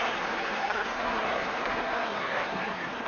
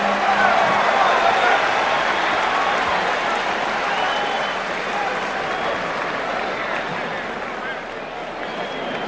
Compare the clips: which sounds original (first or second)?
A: second